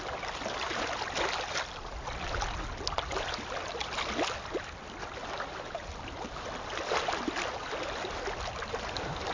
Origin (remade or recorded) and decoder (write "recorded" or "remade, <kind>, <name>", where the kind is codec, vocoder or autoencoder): recorded